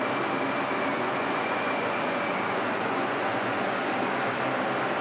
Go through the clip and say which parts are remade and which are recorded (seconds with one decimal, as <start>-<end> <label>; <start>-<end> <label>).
0.0-0.9 recorded; 0.9-3.9 remade; 3.9-5.0 recorded